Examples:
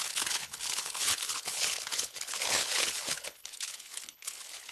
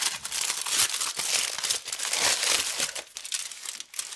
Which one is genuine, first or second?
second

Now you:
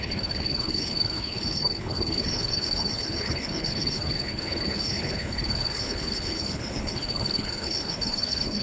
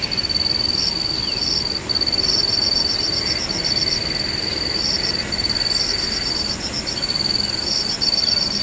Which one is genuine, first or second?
second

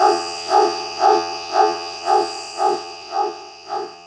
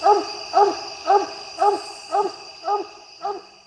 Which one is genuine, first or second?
second